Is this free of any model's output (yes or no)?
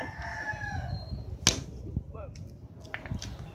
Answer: yes